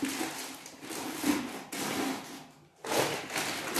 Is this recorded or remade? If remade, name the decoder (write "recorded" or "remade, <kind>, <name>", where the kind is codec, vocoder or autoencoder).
recorded